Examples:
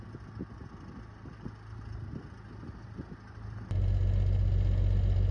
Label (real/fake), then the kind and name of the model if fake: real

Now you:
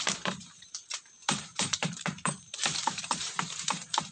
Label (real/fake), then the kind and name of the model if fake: fake, vocoder, BigVGAN v2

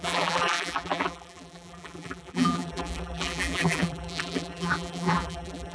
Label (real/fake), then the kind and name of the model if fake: fake, vocoder, BigVGAN v2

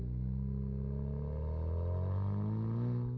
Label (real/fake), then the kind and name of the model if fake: real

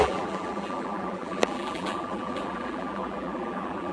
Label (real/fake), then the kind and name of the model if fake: fake, vocoder, BigVGAN v2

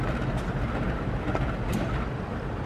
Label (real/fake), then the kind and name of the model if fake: real